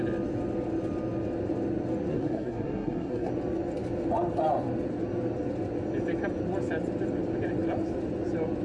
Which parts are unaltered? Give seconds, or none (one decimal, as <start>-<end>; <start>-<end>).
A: 0.0-2.1; 3.3-8.6